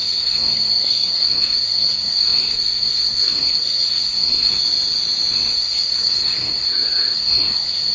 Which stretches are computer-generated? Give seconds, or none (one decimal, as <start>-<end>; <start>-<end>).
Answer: 0.0-4.5; 5.5-7.9